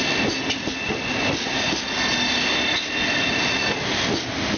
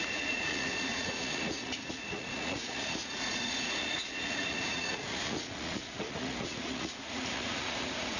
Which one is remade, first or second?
second